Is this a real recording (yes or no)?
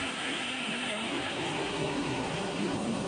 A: no